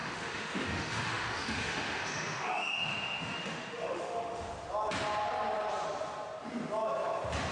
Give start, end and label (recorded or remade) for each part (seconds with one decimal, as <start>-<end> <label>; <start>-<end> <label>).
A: 0.0-4.5 remade; 4.5-7.5 recorded